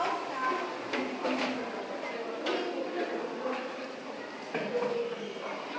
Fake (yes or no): no